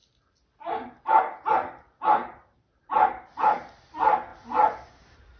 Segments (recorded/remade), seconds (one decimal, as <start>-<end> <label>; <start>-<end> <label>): 0.0-2.9 remade; 2.9-4.3 recorded; 4.3-4.9 remade; 4.9-5.4 recorded